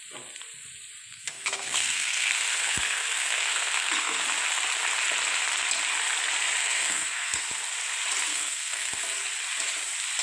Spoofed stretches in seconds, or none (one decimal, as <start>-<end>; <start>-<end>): 1.0-4.2; 6.6-7.4; 8.3-9.0